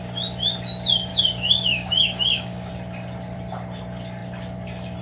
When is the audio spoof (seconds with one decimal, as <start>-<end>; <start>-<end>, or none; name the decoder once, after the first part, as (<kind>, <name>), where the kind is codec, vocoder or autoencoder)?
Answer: 1.1-2.7 (codec, DAC)